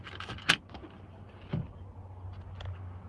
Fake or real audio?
real